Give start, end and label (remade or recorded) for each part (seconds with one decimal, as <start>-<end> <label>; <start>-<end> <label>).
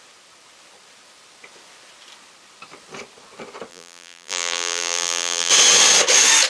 0.0-3.7 recorded; 3.7-5.5 remade; 5.5-6.5 recorded